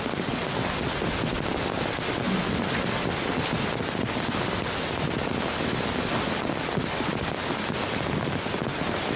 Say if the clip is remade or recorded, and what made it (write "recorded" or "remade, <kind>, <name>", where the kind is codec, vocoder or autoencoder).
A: recorded